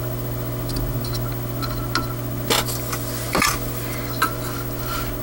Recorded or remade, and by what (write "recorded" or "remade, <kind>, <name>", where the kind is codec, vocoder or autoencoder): recorded